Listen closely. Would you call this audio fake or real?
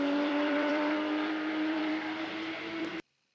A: fake